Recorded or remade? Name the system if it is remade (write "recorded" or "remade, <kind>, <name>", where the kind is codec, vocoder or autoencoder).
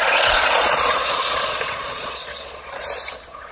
remade, vocoder, Vocos